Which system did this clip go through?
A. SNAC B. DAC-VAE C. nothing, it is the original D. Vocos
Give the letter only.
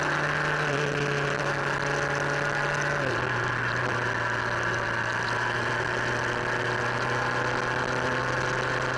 C